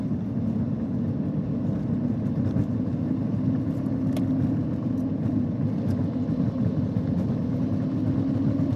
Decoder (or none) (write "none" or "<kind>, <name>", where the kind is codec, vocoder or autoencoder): none